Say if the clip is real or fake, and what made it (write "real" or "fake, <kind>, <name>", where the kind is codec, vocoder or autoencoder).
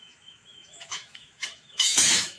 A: fake, autoencoder, DAC-VAE